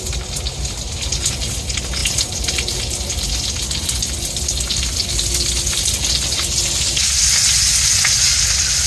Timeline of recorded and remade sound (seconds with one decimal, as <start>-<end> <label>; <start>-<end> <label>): 0.0-8.9 recorded

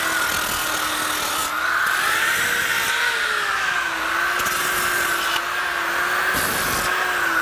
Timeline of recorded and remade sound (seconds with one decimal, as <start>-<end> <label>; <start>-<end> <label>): 0.0-7.4 recorded

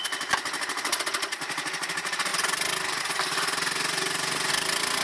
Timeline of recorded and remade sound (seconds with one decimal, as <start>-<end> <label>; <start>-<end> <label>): 0.0-5.0 recorded